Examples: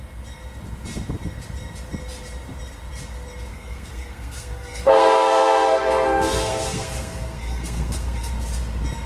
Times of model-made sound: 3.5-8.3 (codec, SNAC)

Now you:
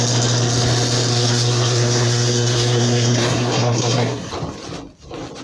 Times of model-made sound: 1.1-4.3 (codec, SNAC)

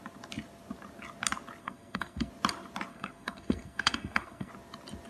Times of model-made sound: 1.6-2.3 (codec, SNAC); 2.9-4.5

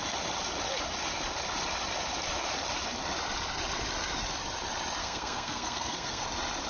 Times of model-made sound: 5.0-6.2 (codec, SNAC)

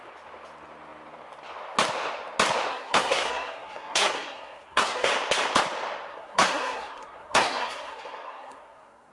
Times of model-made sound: 2.7-5.1 (codec, SNAC); 6.1-9.1

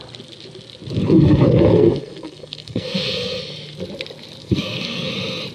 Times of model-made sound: 1.0-3.4 (codec, SNAC); 4.4-5.1

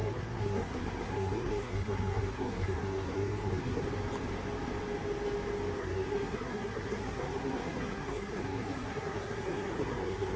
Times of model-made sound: 0.0-3.8 (codec, SNAC); 5.8-10.4

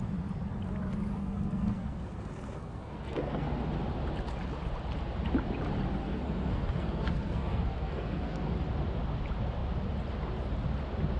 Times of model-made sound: 1.2-3.6 (codec, SNAC); 6.0-8.5